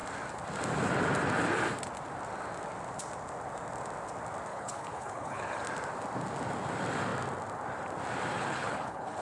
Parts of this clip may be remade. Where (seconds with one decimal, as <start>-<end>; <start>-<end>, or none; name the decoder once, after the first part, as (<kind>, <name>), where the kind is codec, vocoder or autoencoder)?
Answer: 4.5-5.6 (codec, HILCodec); 8.3-9.2